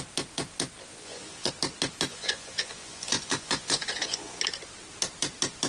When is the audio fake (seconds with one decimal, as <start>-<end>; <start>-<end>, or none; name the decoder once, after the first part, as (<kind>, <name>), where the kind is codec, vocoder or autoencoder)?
0.9-1.5 (vocoder, Vocos); 2.1-4.4